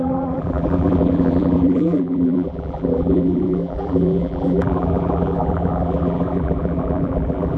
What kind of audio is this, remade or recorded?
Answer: remade